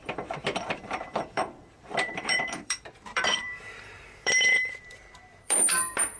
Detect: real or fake fake